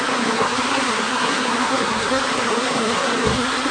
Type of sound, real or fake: fake